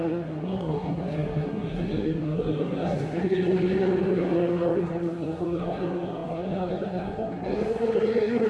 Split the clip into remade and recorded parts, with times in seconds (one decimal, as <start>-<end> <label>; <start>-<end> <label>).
0.0-8.5 remade